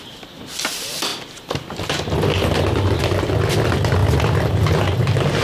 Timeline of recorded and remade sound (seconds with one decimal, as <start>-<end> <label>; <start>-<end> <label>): 0.0-5.4 recorded